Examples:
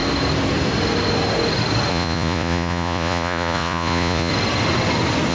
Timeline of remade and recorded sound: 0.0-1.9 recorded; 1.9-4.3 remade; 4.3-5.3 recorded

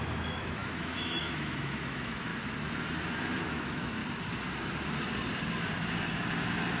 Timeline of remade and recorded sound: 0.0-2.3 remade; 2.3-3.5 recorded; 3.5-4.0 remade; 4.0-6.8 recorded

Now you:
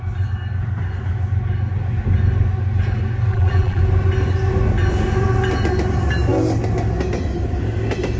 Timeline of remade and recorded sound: 0.0-3.3 recorded; 3.3-3.8 remade; 3.8-8.2 recorded

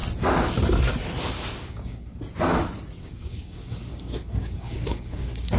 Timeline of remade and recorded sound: 0.0-1.7 recorded; 1.7-2.1 remade; 2.1-3.0 recorded; 3.0-5.6 remade

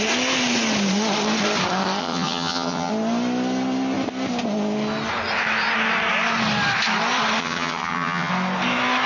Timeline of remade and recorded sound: 0.0-2.0 recorded; 2.0-2.9 remade; 2.9-7.4 recorded; 7.4-8.3 remade; 8.3-9.1 recorded